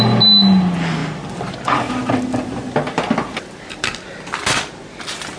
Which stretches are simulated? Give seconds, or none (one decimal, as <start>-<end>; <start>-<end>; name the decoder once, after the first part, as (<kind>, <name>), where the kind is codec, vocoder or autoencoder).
none